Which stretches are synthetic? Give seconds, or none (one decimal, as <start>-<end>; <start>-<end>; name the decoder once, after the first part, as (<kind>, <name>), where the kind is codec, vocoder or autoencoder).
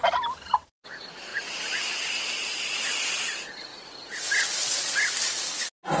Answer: 1.3-1.9 (vocoder, BigVGAN v2); 2.4-3.3